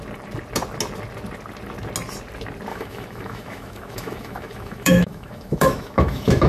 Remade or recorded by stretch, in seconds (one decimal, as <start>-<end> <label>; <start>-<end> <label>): 0.0-2.7 recorded; 2.7-6.5 remade

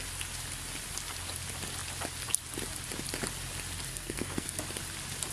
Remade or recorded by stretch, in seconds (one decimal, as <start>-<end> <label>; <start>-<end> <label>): 0.0-3.9 recorded; 3.9-4.6 remade; 4.6-5.3 recorded

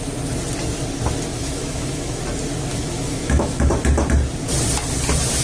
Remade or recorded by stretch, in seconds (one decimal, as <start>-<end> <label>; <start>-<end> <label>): 0.0-1.3 recorded; 1.3-2.2 remade; 2.2-2.7 recorded; 2.7-3.7 remade; 3.7-5.4 recorded

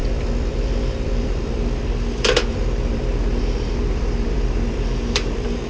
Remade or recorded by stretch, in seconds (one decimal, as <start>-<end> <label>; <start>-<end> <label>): 0.0-5.7 remade

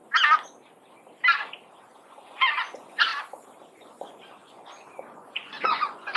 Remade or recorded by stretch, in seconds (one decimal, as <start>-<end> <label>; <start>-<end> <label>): 0.0-1.8 recorded; 1.8-3.1 remade; 3.1-3.8 recorded; 3.8-6.2 remade

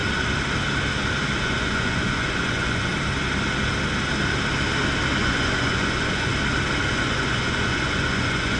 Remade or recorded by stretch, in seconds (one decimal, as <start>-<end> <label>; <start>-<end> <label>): 0.0-1.4 recorded; 1.4-2.9 remade; 2.9-5.2 recorded; 5.2-6.3 remade; 6.3-6.9 recorded; 6.9-8.6 remade